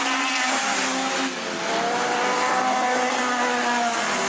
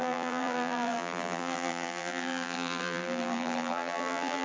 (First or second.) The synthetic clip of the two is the second